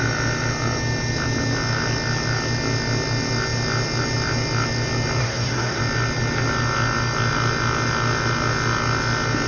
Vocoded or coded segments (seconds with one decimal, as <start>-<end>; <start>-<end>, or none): 5.2-5.8